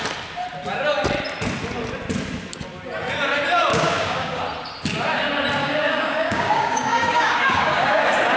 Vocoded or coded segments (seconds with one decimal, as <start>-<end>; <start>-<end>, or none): 3.7-4.4; 5.6-8.0